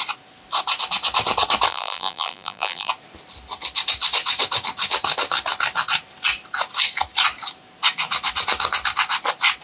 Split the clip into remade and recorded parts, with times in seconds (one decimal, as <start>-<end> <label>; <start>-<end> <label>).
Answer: 0.0-1.7 recorded; 1.7-2.9 remade; 2.9-9.6 recorded